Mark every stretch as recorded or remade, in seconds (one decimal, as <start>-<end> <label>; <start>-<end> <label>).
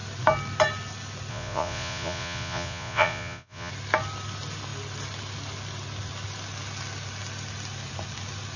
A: 0.0-1.3 recorded; 1.3-3.7 remade; 3.7-8.6 recorded